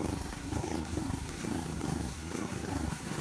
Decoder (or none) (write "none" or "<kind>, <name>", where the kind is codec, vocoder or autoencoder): codec, SNAC